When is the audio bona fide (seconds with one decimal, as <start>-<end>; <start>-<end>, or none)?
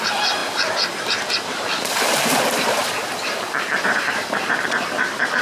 none